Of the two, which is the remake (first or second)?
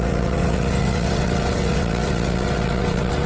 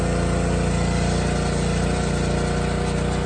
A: first